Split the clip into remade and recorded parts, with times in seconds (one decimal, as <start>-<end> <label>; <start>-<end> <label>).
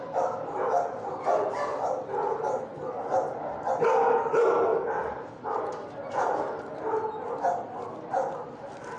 0.0-9.0 recorded